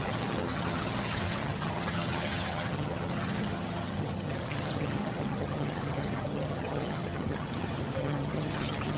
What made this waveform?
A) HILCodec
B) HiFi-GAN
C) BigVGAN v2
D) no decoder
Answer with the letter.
B